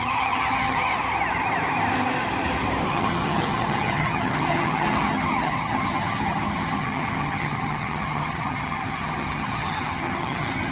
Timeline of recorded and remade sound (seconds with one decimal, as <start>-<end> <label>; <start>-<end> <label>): 0.0-0.9 remade; 0.9-2.9 recorded; 2.9-10.7 remade